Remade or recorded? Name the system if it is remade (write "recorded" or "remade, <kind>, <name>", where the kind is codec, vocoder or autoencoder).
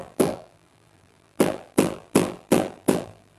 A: remade, vocoder, BigVGAN v2